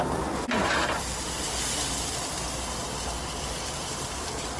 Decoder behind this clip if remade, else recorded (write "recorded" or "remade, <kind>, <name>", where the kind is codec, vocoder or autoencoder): recorded